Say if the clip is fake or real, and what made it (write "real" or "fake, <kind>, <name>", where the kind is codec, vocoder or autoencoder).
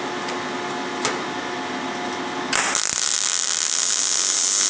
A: real